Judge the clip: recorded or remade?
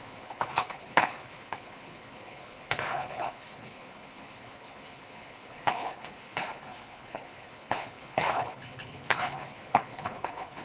remade